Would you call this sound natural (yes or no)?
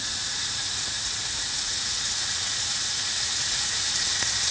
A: no